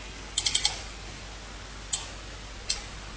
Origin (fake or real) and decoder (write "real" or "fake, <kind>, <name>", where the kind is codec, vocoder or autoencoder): real